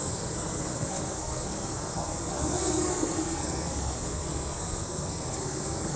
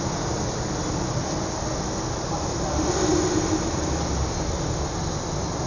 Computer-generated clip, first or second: first